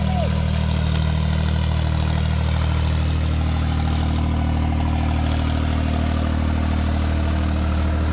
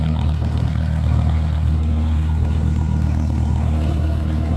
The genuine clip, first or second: first